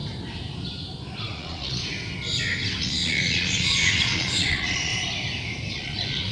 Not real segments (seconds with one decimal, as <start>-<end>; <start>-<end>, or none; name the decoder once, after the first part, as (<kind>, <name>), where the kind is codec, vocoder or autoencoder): 1.2-1.8 (vocoder, Vocos); 2.8-4.9; 5.7-6.3